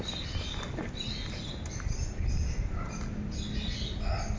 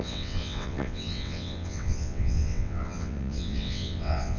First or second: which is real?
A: first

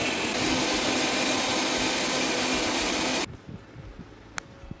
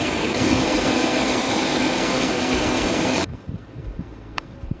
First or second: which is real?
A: first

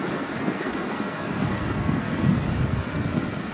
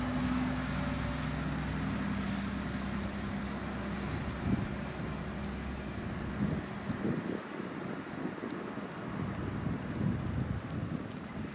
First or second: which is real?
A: second